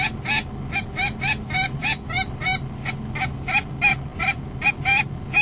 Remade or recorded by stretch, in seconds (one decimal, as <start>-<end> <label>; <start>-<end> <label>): 0.0-5.4 recorded